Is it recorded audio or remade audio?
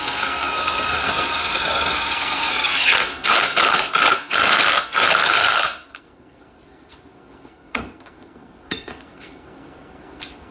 remade